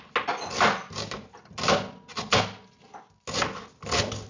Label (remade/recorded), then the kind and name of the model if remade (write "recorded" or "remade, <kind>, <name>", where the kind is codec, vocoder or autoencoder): recorded